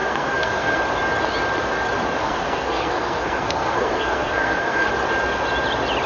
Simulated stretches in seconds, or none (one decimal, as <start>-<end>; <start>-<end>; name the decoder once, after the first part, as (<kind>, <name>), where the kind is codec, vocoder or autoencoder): 0.0-0.8 (codec, SNAC); 2.2-4.9

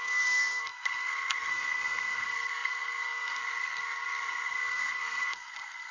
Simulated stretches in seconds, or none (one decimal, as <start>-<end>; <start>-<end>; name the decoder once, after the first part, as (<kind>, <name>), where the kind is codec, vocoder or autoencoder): 0.0-5.9 (codec, SNAC)

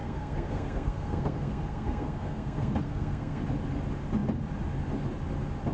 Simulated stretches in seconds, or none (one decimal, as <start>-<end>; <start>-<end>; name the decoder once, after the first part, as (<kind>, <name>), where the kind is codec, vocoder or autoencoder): 0.0-3.4 (codec, SNAC)